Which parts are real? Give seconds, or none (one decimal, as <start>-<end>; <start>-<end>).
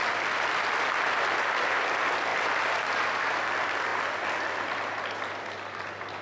0.0-6.2